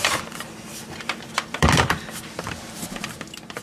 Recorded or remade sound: remade